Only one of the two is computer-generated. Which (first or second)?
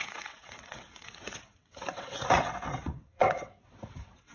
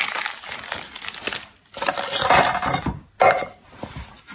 first